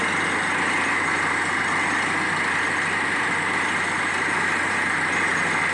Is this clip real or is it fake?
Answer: real